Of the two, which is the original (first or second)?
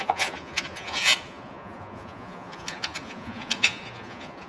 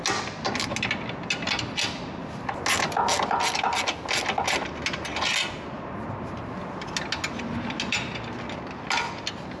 second